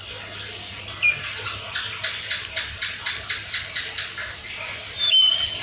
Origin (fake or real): real